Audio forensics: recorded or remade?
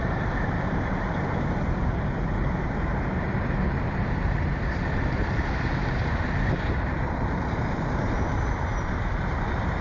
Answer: remade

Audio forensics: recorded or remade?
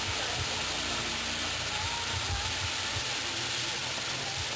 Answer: recorded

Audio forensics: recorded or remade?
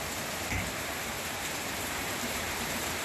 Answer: remade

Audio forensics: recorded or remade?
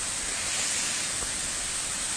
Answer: recorded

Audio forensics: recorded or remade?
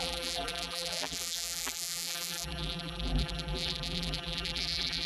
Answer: remade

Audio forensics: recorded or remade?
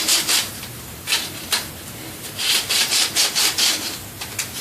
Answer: remade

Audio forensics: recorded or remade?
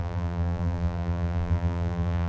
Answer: remade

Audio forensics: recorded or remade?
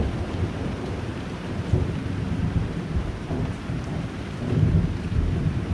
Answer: remade